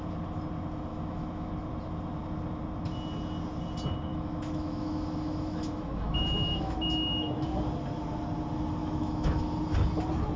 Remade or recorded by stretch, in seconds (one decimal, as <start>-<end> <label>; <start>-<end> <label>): 0.0-0.9 recorded; 0.9-1.5 remade; 1.5-4.1 recorded; 4.1-7.5 remade; 7.5-8.8 recorded; 8.8-9.5 remade; 9.5-10.4 recorded

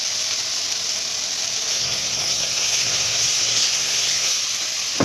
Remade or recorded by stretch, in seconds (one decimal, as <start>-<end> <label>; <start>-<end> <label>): 0.0-1.7 recorded; 1.7-4.4 remade; 4.4-5.0 recorded